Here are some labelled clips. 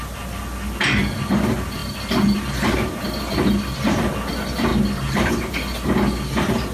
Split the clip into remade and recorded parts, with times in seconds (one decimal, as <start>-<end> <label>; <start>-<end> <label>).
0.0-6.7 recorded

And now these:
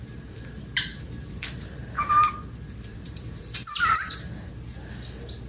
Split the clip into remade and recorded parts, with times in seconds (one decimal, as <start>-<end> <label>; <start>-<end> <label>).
0.0-0.9 recorded; 0.9-2.1 remade; 2.1-2.9 recorded; 2.9-4.5 remade; 4.5-5.5 recorded

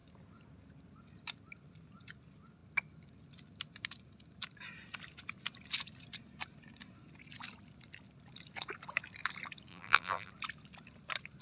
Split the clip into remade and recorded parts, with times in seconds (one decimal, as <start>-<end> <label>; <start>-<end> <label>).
0.0-9.7 recorded; 9.7-10.3 remade; 10.3-11.4 recorded

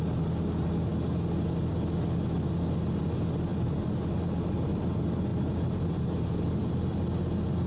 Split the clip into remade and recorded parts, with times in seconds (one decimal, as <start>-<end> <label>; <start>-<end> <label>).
0.0-3.5 recorded; 3.5-4.8 remade; 4.8-5.3 recorded; 5.3-7.0 remade; 7.0-7.7 recorded